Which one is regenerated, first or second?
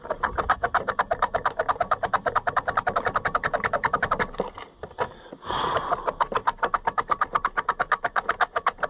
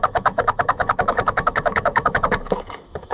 second